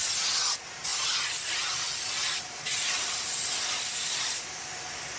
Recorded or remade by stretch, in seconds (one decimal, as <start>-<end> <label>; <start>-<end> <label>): 0.0-5.2 recorded